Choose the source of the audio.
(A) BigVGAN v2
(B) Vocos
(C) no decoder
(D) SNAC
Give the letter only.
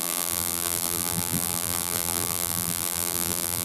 A